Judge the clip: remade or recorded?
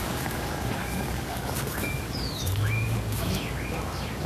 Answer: remade